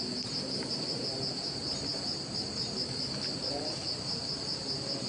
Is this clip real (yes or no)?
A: yes